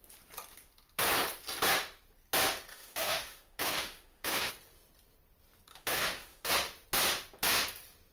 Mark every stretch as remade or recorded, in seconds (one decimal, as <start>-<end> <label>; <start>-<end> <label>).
0.0-2.7 recorded; 2.7-4.5 remade; 4.5-5.7 recorded; 5.7-6.5 remade; 6.5-8.1 recorded

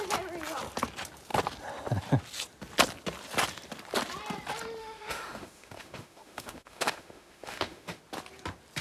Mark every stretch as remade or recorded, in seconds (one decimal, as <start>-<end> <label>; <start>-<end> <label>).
0.0-4.8 recorded; 4.8-8.0 remade; 8.0-8.8 recorded

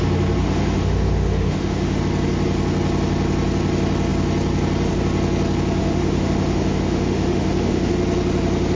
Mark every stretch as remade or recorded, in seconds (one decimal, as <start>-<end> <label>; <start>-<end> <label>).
0.0-0.4 recorded; 0.4-2.0 remade; 2.0-5.8 recorded; 5.8-7.9 remade; 7.9-8.7 recorded

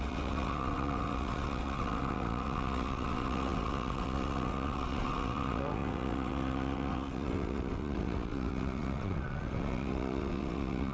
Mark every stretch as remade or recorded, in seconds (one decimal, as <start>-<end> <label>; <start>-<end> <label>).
0.0-10.9 remade

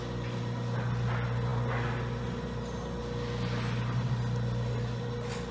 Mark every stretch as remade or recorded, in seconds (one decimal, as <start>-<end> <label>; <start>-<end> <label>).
0.0-5.5 recorded

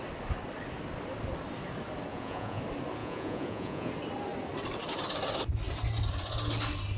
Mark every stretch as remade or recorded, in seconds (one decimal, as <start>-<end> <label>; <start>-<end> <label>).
0.0-2.1 recorded; 2.1-2.6 remade; 2.6-3.0 recorded; 3.0-3.9 remade; 3.9-7.0 recorded